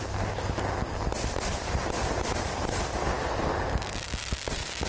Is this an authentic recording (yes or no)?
yes